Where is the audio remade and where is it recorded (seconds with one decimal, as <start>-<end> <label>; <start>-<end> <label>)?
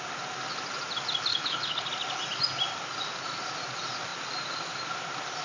0.0-1.3 recorded; 1.3-1.9 remade; 1.9-5.4 recorded